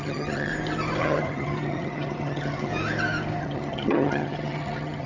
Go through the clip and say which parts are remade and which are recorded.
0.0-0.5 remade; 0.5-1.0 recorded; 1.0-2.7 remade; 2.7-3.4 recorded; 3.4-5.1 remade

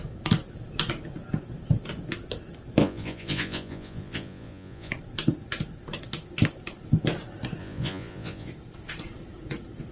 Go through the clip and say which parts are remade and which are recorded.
0.0-2.8 recorded; 2.8-4.9 remade; 4.9-7.6 recorded; 7.6-8.5 remade; 8.5-9.9 recorded

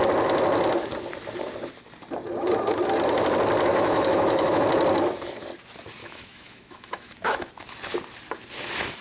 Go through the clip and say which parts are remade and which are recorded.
0.0-3.7 recorded; 3.7-4.6 remade; 4.6-6.0 recorded; 6.0-7.5 remade; 7.5-9.0 recorded

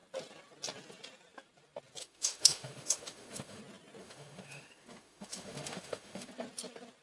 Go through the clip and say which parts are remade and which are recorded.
0.0-2.0 recorded; 2.0-3.6 remade; 3.6-4.0 recorded; 4.0-6.3 remade; 6.3-7.0 recorded